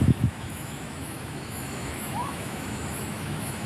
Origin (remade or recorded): remade